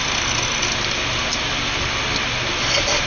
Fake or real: real